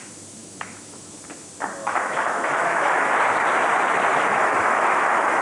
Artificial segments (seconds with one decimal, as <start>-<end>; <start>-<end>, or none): 0.4-1.1; 1.8-3.2; 4.1-5.4